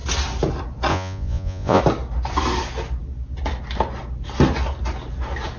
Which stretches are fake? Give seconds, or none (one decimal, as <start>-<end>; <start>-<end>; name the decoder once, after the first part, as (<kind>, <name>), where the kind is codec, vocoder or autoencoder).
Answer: 0.9-1.8 (vocoder, Vocos)